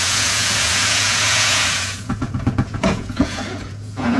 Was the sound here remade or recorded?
remade